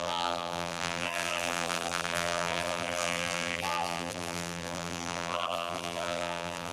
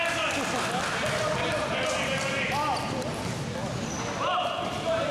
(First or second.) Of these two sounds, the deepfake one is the first